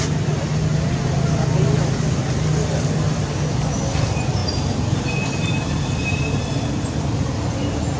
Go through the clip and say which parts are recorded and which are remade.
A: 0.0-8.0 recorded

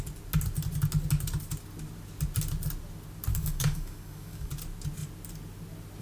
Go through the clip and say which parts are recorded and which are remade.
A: 0.0-3.3 recorded; 3.3-4.5 remade; 4.5-6.0 recorded

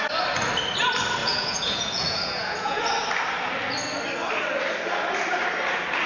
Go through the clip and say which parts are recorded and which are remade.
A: 0.0-1.2 recorded; 1.2-2.8 remade; 2.8-6.1 recorded

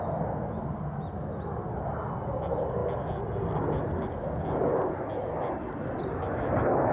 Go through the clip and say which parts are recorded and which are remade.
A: 0.0-6.9 recorded